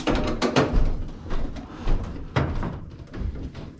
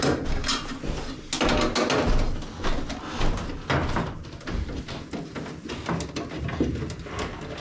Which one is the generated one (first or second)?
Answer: first